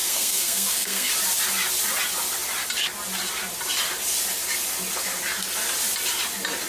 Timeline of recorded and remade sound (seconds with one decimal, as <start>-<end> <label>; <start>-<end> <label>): 0.0-1.1 remade; 1.1-6.7 recorded